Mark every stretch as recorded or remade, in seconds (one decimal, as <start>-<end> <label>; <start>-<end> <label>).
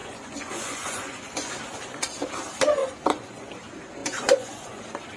0.0-1.5 remade; 1.5-2.8 recorded; 2.8-3.5 remade; 3.5-4.0 recorded; 4.0-4.8 remade; 4.8-5.2 recorded